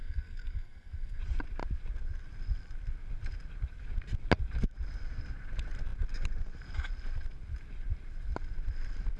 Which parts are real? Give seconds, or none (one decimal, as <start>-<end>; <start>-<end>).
1.2-9.2